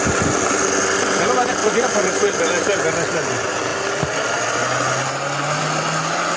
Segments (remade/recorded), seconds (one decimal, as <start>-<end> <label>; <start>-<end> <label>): 0.0-1.6 recorded; 1.6-2.1 remade; 2.1-6.4 recorded